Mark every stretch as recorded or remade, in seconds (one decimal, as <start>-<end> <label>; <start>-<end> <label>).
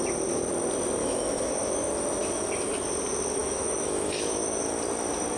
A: 0.0-1.0 recorded; 1.0-1.9 remade; 1.9-3.4 recorded; 3.4-4.6 remade; 4.6-5.4 recorded